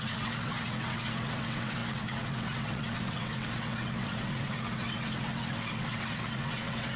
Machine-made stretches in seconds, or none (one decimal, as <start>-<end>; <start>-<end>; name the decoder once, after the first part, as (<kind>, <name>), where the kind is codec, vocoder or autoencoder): 0.0-7.0 (vocoder, WaveNeXt)